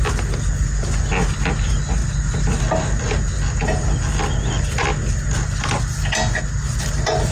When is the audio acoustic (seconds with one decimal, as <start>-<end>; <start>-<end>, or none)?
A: 0.0-7.3